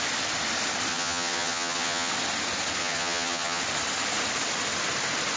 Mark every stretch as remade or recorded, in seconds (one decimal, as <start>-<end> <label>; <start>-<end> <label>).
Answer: 0.0-0.9 recorded; 0.9-2.1 remade; 2.1-2.8 recorded; 2.8-3.6 remade; 3.6-5.4 recorded